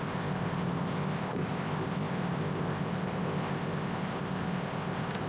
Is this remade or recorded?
remade